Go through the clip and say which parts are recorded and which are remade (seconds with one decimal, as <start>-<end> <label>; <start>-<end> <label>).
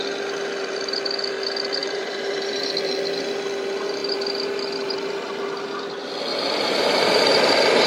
0.0-1.8 recorded; 1.8-2.6 remade; 2.6-6.3 recorded; 6.3-7.9 remade